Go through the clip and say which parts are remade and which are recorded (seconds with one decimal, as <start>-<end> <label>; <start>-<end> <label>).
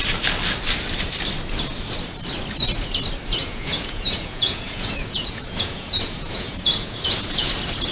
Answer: 0.0-3.4 recorded; 3.4-7.5 remade; 7.5-7.9 recorded